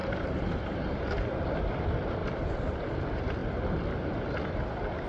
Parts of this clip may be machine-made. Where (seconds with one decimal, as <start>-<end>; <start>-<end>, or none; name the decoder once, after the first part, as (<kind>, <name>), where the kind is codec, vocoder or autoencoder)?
0.0-0.6 (vocoder, BigVGAN v2); 2.2-3.0